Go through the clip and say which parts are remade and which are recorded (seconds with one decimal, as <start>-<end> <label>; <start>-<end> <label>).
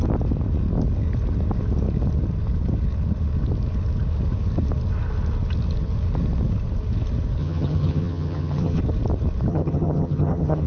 0.0-7.4 recorded; 7.4-8.8 remade; 8.8-9.5 recorded; 9.5-10.7 remade